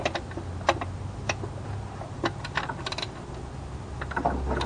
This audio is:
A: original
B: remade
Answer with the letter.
A